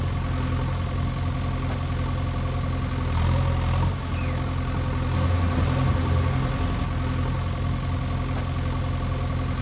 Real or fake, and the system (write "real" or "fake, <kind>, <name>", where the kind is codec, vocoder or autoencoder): real